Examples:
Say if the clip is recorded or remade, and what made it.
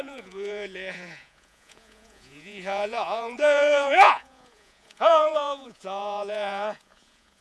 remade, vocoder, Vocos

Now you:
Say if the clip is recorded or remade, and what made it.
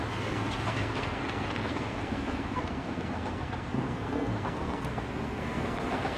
remade, codec, SNAC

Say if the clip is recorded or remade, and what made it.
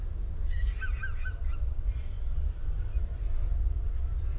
recorded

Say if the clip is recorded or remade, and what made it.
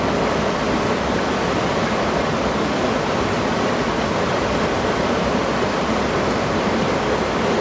recorded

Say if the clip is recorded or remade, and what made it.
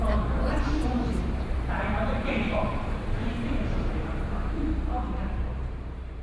remade, vocoder, BigVGAN v2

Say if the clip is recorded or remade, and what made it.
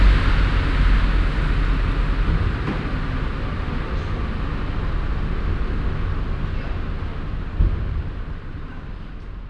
recorded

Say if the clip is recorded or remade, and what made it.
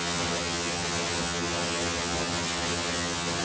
remade, vocoder, HiFi-GAN